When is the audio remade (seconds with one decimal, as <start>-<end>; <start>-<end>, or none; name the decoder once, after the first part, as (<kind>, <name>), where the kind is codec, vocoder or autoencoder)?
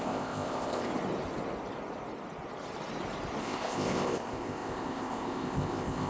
0.0-0.9 (codec, ZipCodec); 3.4-6.1